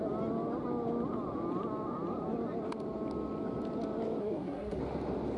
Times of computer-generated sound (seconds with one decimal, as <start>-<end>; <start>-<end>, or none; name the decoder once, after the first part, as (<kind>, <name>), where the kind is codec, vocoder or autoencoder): 4.2-4.8 (codec, SNAC)